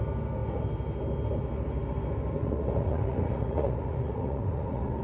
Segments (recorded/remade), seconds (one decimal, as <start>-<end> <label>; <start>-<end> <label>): 0.0-2.4 recorded; 2.4-5.0 remade